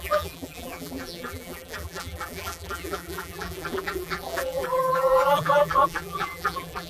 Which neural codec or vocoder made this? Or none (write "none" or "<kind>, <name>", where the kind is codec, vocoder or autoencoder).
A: vocoder, BigVGAN v2